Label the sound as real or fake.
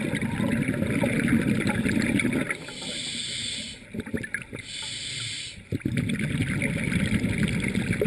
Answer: real